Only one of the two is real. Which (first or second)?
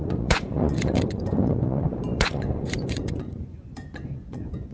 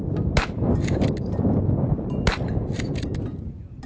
second